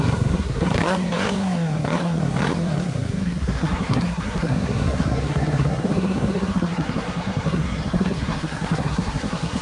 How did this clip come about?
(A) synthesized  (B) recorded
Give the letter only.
A